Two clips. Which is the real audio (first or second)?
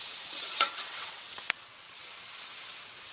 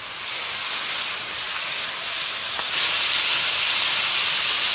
second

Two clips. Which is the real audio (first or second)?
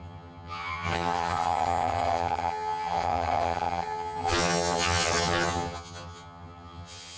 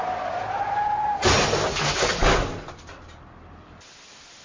second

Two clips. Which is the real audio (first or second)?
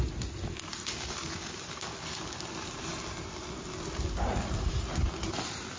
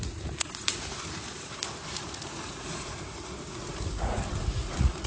first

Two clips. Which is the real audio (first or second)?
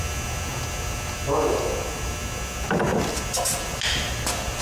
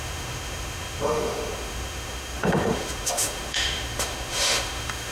first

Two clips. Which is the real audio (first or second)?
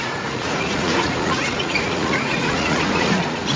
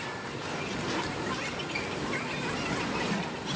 second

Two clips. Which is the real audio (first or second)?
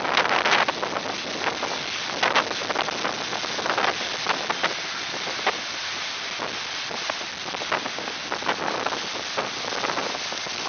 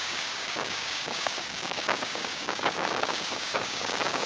first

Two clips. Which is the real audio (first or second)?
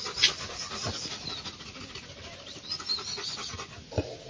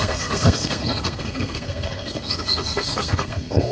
first